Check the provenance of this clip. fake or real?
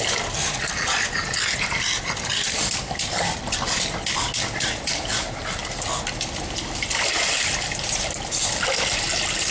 real